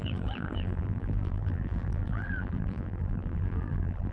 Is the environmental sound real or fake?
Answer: fake